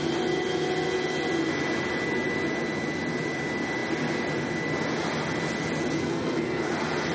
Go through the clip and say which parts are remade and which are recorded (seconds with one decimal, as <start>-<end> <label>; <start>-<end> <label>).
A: 0.0-6.0 recorded; 6.0-6.6 remade; 6.6-7.1 recorded